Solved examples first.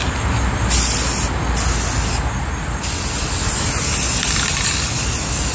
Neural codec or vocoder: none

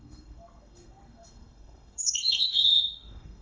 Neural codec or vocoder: codec, SNAC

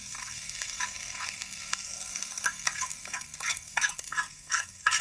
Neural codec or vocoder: codec, SNAC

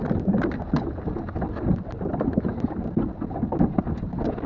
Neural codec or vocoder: none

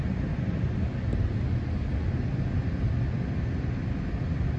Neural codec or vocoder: none